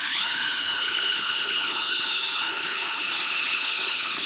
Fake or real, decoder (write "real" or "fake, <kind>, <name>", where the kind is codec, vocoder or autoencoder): fake, codec, HILCodec